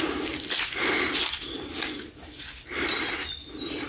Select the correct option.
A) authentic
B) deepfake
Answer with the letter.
A